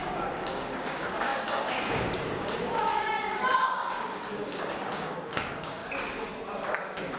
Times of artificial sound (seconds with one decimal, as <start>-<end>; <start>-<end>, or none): 0.0-5.8